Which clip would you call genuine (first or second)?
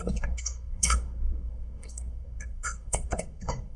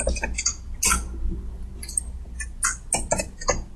second